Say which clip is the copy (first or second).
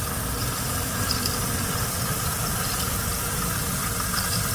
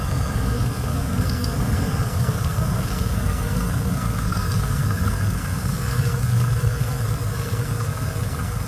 second